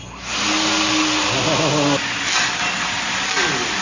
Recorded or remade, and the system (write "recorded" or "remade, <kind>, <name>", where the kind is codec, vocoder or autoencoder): recorded